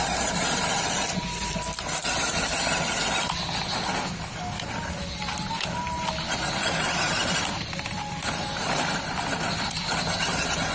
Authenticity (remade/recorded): recorded